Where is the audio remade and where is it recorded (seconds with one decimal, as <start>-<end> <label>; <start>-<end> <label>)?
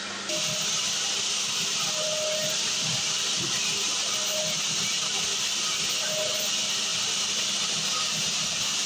0.0-2.4 recorded; 2.4-3.2 remade; 3.2-6.9 recorded; 6.9-7.7 remade; 7.7-8.9 recorded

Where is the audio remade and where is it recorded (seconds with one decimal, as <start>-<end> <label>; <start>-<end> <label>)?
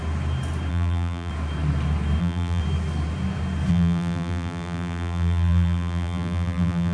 0.0-0.7 recorded; 0.7-1.3 remade; 1.3-2.2 recorded; 2.2-2.6 remade; 2.6-3.7 recorded; 3.7-6.9 remade